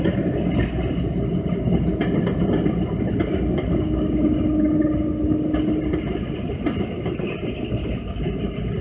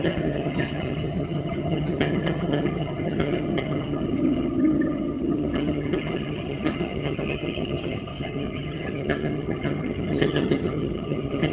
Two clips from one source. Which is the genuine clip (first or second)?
first